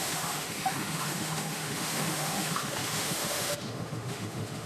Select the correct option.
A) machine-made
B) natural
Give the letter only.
A